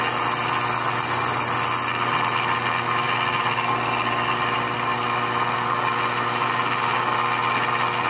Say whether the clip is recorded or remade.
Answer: recorded